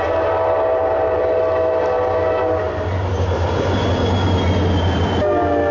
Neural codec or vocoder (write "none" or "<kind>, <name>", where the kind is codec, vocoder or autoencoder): none